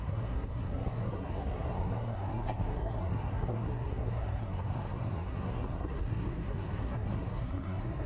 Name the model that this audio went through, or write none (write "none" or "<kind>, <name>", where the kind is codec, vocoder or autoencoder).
codec, SNAC